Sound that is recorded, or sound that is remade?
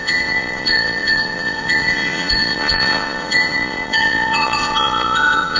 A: remade